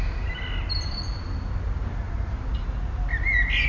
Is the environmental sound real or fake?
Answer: real